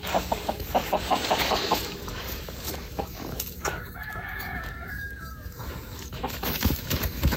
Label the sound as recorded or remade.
remade